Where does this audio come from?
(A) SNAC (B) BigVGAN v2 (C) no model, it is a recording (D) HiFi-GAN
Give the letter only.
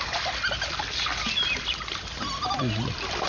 C